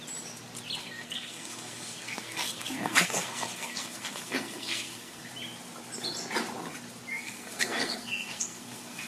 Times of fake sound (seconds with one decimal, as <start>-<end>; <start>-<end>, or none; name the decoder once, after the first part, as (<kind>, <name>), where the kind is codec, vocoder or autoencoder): 0.8-5.3 (codec, SNAC); 7.1-9.1